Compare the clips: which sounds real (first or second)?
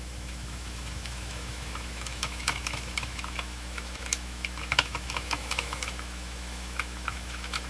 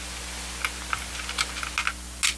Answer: second